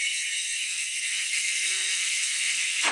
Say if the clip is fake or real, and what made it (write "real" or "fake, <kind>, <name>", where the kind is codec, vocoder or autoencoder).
fake, codec, SNAC